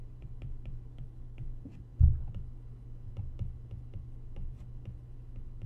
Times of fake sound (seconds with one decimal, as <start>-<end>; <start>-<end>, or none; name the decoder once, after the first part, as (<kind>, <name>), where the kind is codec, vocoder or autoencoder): 0.9-1.5 (codec, DAC)